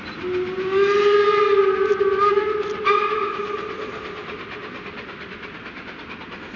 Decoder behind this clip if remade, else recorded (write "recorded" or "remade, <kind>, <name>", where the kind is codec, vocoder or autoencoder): recorded